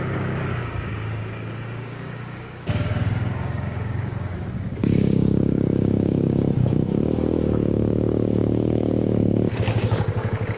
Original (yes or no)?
no